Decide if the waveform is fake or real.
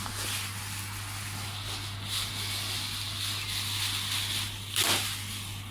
real